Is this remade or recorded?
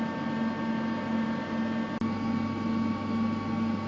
recorded